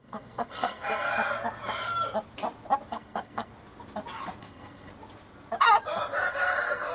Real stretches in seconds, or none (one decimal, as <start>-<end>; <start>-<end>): 1.1-2.9; 3.5-4.4; 4.9-6.3